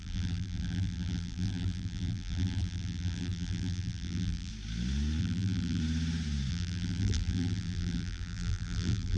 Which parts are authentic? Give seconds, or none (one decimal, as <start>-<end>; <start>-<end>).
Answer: 4.5-5.2; 5.8-6.5